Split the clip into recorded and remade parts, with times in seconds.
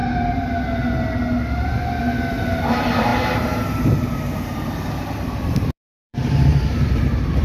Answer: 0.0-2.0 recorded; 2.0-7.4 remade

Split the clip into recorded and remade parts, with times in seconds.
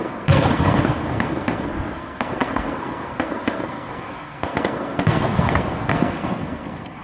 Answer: 0.0-7.0 remade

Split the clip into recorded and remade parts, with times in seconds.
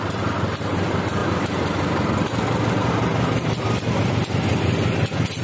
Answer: 0.0-5.4 recorded